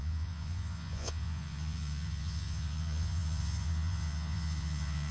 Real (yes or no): no